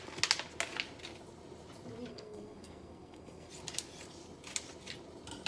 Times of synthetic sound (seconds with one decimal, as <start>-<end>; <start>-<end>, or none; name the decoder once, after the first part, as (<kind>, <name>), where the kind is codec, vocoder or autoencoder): 2.1-3.5 (codec, SNAC)